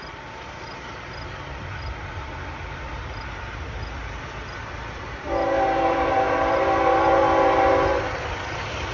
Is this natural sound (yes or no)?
yes